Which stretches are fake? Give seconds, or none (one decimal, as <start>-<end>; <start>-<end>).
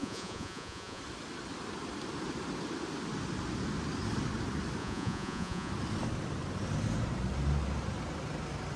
0.0-1.0; 4.8-5.7